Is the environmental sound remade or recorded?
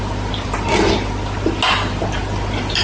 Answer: recorded